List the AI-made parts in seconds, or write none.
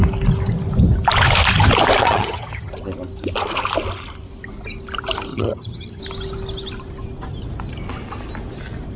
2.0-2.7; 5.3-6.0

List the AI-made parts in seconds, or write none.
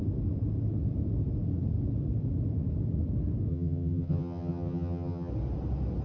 3.5-5.3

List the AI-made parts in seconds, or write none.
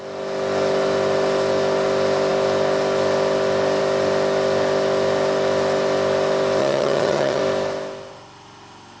6.6-7.4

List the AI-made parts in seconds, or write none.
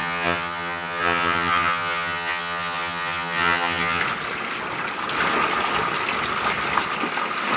0.0-4.0